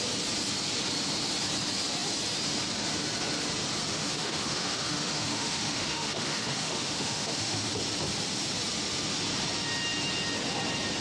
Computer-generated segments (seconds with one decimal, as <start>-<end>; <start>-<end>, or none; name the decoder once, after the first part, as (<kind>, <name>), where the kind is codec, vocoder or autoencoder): 3.9-7.7 (autoencoder, DAC-VAE)